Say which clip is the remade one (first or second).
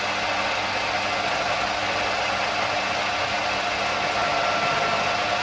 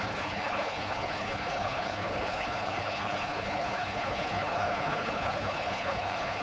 second